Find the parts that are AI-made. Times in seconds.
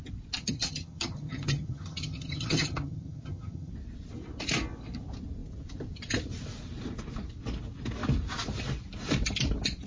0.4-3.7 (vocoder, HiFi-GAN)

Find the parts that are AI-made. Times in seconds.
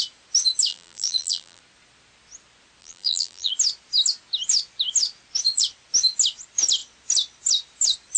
0.7-1.6 (vocoder, BigVGAN v2); 2.8-3.5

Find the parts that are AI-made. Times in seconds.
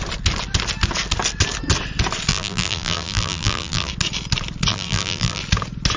2.3-3.9 (vocoder, BigVGAN v2); 4.7-5.4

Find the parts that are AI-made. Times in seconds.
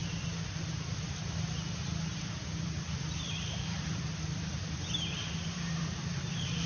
0.0-0.7 (vocoder, BigVGAN v2); 2.1-6.1